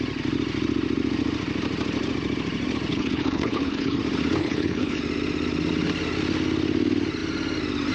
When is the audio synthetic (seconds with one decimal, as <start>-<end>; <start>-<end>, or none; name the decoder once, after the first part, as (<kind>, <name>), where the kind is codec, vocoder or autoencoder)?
2.9-4.0 (codec, HILCodec); 4.4-5.0